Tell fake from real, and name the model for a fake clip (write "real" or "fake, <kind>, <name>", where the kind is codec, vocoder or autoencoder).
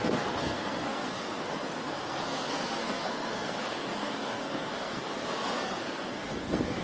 fake, codec, SNAC